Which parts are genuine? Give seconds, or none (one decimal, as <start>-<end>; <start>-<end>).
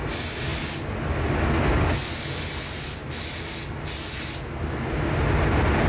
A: 0.0-5.9